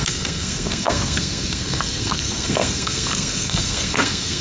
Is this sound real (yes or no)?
no